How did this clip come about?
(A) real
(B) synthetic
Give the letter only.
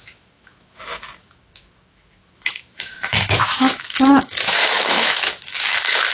B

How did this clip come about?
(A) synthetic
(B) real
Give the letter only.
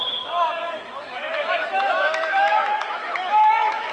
A